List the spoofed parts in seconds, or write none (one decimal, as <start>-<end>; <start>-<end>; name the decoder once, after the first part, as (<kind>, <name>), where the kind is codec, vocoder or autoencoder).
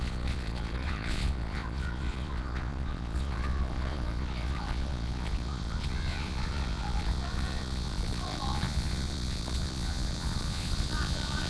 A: 0.0-11.5 (vocoder, Vocos)